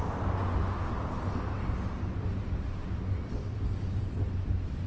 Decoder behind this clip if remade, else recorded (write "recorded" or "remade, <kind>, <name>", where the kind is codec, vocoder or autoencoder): recorded